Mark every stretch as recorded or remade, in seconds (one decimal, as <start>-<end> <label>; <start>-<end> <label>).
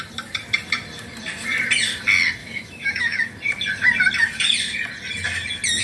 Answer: 0.0-2.4 recorded; 2.4-3.2 remade; 3.2-5.8 recorded